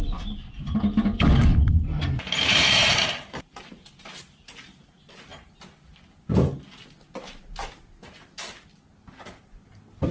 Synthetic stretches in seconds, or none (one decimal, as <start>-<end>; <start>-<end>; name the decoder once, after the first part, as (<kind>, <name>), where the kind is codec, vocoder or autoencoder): 1.5-4.2 (vocoder, BigVGAN v2)